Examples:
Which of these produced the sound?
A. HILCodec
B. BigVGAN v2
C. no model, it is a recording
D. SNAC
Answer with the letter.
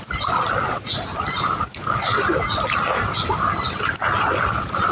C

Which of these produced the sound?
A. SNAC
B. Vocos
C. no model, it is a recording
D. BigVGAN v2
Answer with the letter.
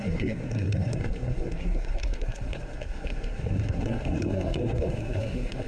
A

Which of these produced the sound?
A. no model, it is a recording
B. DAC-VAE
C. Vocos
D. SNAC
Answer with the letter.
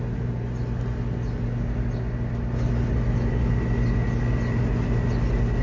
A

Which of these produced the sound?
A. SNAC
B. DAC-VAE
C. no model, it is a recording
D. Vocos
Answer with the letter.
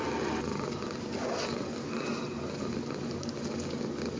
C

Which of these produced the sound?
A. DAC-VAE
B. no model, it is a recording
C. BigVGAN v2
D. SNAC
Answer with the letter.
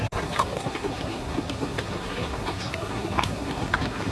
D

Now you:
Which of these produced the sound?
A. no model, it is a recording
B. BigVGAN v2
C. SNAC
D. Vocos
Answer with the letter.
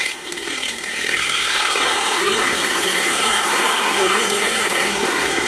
C